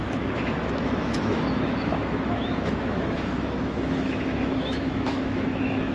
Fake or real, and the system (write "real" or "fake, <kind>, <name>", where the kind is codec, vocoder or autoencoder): fake, autoencoder, DAC-VAE